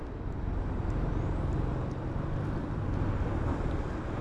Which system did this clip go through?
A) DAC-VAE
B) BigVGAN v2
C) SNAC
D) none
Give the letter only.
D